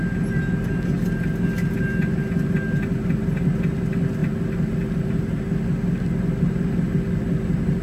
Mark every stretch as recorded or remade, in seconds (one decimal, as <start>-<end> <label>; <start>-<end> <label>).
0.0-7.8 recorded